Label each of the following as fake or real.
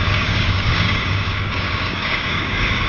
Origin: fake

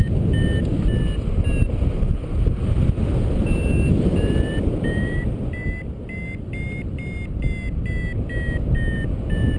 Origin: real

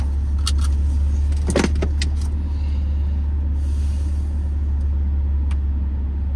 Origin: real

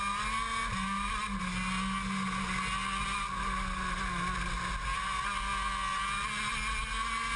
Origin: real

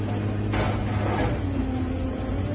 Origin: real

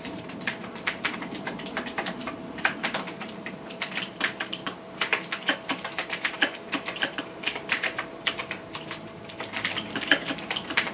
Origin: fake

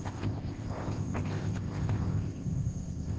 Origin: fake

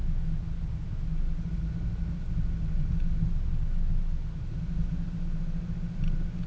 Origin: real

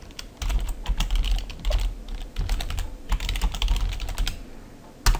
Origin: real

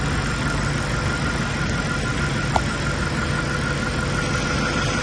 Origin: real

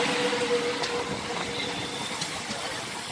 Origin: real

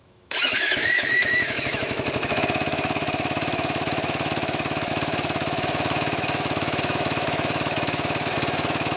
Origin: fake